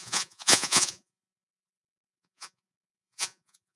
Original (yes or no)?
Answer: no